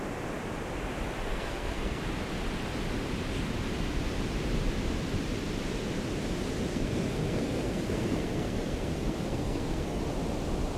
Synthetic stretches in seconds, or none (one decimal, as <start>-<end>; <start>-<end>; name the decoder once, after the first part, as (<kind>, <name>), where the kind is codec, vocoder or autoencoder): 1.3-2.0 (codec, SNAC); 6.7-10.0